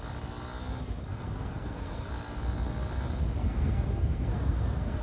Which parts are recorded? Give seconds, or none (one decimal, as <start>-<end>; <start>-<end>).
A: 0.0-1.1; 2.1-3.4